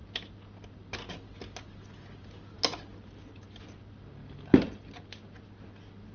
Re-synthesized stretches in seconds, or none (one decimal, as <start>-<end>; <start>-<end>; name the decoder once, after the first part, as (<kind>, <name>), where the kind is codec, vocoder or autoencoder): none